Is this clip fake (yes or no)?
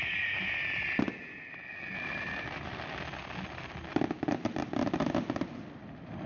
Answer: no